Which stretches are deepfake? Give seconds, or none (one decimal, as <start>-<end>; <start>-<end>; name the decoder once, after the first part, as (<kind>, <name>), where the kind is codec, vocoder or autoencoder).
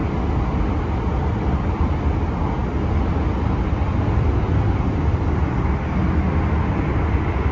none